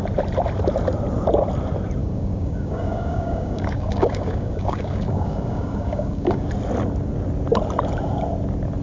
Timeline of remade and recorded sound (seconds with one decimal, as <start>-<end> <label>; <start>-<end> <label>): 0.0-2.0 recorded; 2.0-6.5 remade; 6.5-8.8 recorded